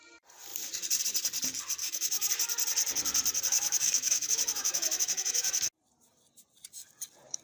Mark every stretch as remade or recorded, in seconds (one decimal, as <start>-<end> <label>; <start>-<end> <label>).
0.0-1.8 recorded; 1.8-2.3 remade; 2.3-3.5 recorded; 3.5-5.6 remade; 5.6-7.4 recorded